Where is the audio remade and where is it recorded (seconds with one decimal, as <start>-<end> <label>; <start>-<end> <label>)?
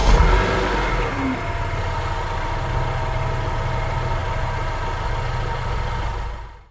0.0-6.7 recorded